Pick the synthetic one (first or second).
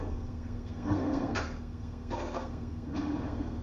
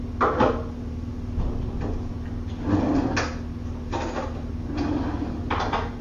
first